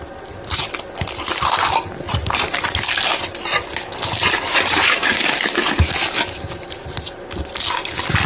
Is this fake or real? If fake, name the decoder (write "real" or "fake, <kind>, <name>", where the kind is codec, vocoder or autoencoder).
real